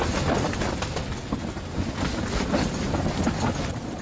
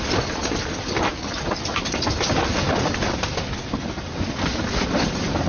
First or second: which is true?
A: first